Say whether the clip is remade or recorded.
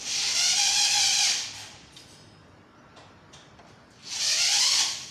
recorded